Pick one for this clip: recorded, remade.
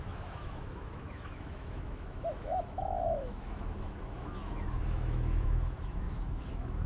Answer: remade